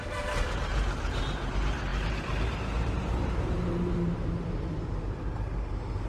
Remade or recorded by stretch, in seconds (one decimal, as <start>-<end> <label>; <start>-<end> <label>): 0.0-0.7 remade; 0.7-1.2 recorded; 1.2-6.1 remade